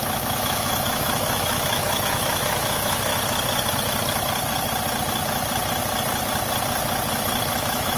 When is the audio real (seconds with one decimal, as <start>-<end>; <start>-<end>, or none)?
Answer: 3.1-7.6